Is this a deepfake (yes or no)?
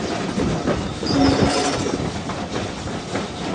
no